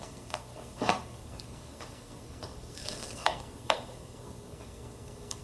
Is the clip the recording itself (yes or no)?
no